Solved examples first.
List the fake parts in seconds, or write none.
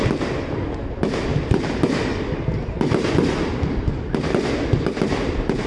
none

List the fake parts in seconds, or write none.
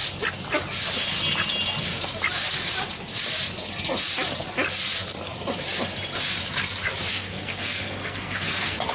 7.1-8.9 (codec, SNAC)